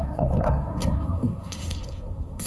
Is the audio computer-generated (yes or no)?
yes